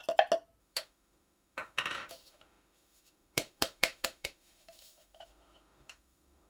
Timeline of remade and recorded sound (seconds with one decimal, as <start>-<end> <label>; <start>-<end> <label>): 0.0-0.6 recorded; 0.6-6.5 remade